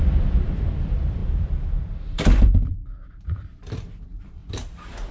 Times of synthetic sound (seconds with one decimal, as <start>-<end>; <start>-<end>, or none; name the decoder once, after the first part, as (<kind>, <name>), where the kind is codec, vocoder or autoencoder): 0.0-2.8 (vocoder, BigVGAN v2); 3.8-4.4